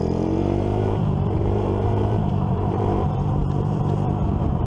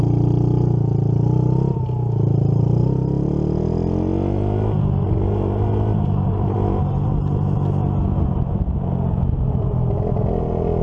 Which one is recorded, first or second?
second